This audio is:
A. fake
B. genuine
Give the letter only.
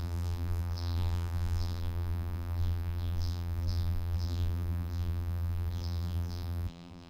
A